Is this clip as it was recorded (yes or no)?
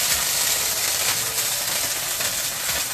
yes